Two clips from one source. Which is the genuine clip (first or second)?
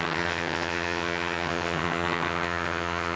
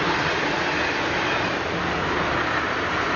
second